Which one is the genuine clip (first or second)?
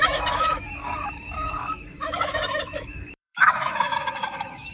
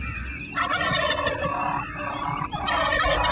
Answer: second